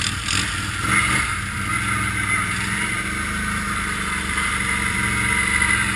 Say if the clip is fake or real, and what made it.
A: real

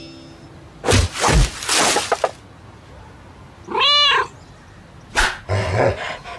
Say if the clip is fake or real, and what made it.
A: real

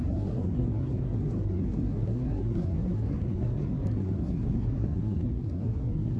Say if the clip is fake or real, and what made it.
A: fake, codec, SNAC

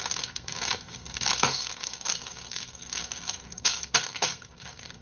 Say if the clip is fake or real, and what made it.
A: fake, codec, SNAC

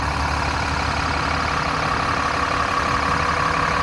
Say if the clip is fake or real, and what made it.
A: real